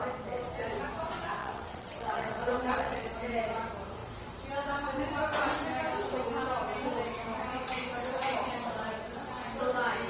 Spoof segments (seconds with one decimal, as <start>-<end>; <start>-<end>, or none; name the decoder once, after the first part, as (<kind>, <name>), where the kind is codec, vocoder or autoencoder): 1.4-3.1 (vocoder, WaveNeXt)